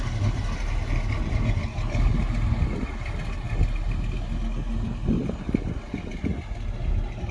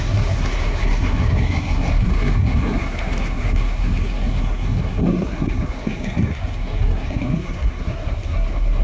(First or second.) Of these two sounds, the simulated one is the second